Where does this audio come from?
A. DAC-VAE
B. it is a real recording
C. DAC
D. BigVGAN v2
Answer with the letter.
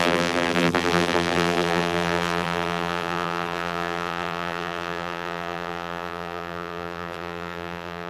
D